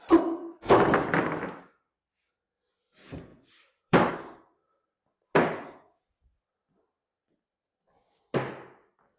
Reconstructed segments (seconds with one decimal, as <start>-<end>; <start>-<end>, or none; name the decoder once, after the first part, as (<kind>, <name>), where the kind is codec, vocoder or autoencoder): 3.3-4.1 (vocoder, BigVGAN v2)